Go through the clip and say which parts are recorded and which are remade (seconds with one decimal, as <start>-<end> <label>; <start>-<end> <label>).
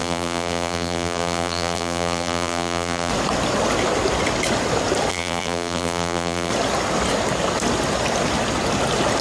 0.0-3.1 remade; 3.1-5.1 recorded; 5.1-6.5 remade; 6.5-9.2 recorded